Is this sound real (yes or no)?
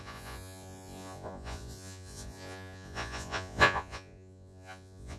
no